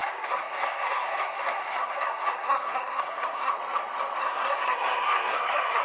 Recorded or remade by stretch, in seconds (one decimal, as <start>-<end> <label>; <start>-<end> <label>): 0.0-3.5 remade; 3.5-4.2 recorded; 4.2-5.8 remade